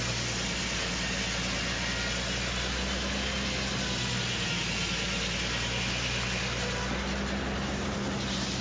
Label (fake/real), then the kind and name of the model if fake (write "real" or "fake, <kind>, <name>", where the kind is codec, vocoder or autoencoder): real